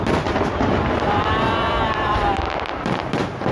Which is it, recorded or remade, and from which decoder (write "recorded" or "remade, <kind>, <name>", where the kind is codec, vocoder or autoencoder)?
remade, vocoder, BigVGAN v2